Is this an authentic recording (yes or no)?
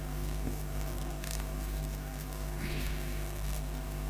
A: no